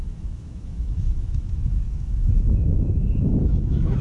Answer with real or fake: fake